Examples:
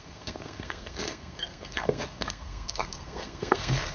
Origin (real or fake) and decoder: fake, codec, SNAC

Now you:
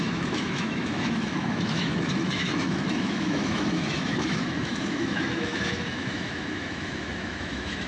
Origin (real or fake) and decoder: fake, autoencoder, DAC-VAE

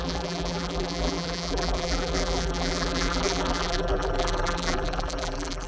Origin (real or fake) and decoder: fake, vocoder, BigVGAN v2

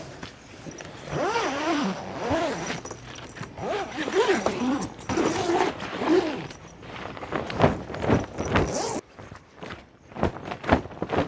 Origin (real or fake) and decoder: fake, vocoder, BigVGAN v2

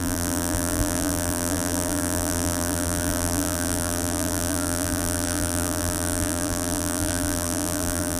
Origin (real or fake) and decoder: fake, vocoder, BigVGAN v2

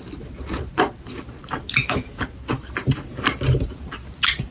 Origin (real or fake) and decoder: fake, vocoder, BigVGAN v2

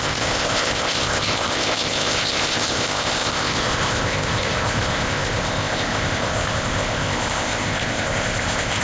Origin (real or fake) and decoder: fake, codec, ZipCodec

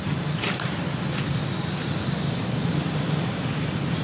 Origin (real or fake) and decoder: fake, vocoder, BigVGAN v2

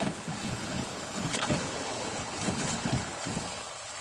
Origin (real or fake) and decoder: fake, codec, HILCodec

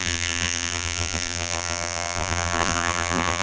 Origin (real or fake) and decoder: fake, vocoder, BigVGAN v2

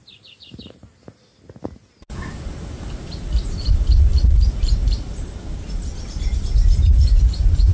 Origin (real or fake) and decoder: real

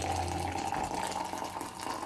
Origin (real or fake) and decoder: real